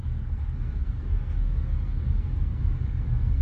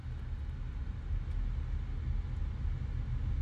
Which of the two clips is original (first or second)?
second